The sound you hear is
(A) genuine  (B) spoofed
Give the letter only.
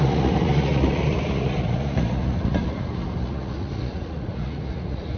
B